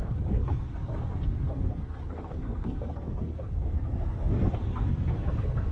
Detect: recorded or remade remade